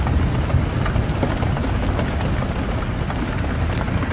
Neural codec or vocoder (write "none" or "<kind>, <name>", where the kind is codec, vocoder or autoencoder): none